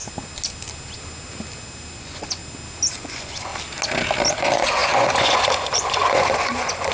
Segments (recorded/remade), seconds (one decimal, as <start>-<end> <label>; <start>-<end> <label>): 0.0-2.0 recorded; 2.0-2.4 remade; 2.4-3.0 recorded; 3.0-3.5 remade; 3.5-4.3 recorded; 4.3-6.9 remade

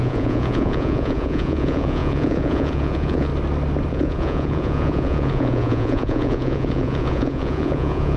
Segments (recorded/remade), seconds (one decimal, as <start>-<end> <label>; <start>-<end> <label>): 0.0-3.3 remade; 3.3-3.9 recorded; 3.9-8.2 remade

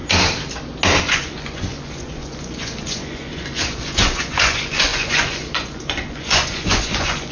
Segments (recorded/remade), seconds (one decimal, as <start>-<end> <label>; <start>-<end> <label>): 0.0-1.0 recorded; 1.0-7.3 remade

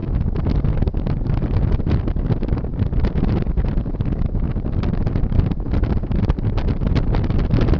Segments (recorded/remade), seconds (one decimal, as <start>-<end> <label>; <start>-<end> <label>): 0.0-7.8 recorded